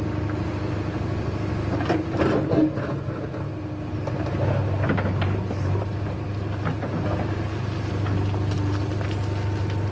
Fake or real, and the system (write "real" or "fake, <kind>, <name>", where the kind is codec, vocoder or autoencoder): real